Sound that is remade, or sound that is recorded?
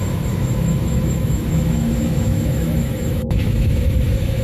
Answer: remade